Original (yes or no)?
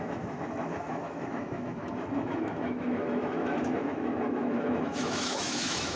no